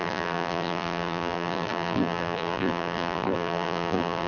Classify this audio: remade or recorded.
remade